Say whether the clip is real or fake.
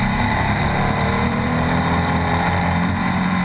fake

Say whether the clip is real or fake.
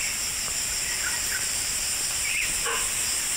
fake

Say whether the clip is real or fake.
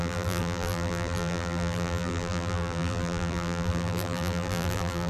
fake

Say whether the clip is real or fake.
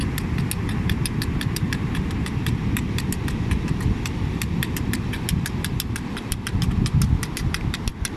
real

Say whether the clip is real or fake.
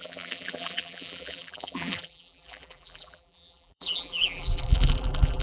fake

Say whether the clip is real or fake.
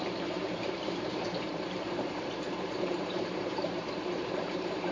fake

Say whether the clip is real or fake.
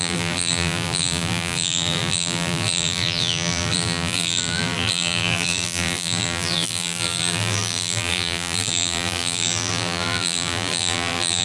fake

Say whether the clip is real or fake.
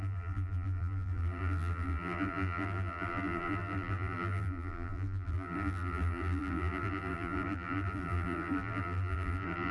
fake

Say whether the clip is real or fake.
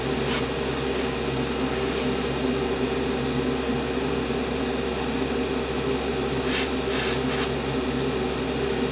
real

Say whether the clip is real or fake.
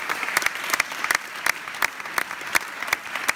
fake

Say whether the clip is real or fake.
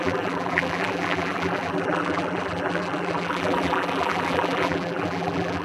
fake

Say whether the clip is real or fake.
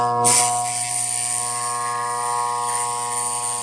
real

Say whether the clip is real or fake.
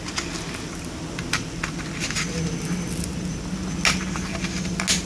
real